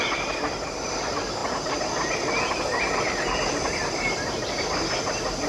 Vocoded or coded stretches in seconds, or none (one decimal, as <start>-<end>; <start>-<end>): 0.0-1.4; 4.7-5.5